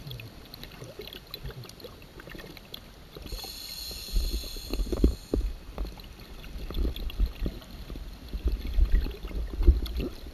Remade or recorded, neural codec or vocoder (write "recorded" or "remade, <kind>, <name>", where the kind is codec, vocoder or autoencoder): recorded